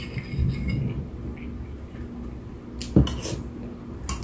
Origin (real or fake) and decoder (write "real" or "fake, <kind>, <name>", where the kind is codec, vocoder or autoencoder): real